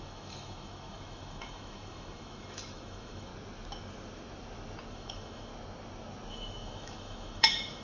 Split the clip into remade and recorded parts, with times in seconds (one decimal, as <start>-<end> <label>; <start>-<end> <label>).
0.0-3.3 remade; 3.3-4.9 recorded; 4.9-5.5 remade; 5.5-6.3 recorded; 6.3-7.8 remade